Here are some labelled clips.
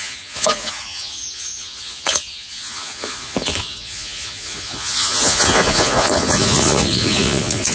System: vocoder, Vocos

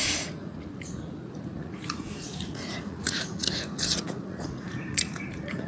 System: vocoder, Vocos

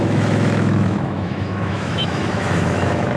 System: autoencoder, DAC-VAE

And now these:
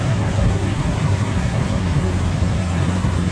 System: codec, SNAC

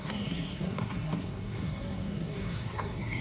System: codec, SNAC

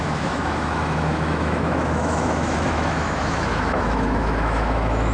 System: autoencoder, DAC-VAE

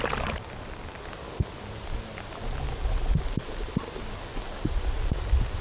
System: none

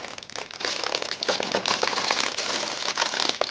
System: none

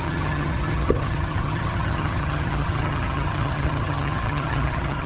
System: vocoder, HiFi-GAN